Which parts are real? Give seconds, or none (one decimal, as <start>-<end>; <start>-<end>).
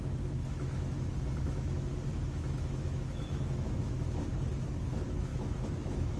4.3-4.8